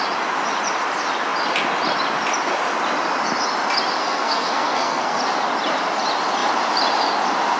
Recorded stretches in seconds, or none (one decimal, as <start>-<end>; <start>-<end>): 0.0-4.0; 5.2-7.6